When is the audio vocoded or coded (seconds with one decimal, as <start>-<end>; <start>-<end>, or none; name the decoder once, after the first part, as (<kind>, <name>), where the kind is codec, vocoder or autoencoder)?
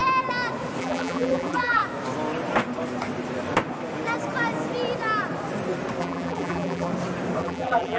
0.8-1.8 (vocoder, BigVGAN v2); 6.0-6.9; 7.4-8.0